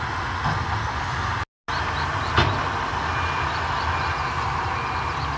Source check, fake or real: real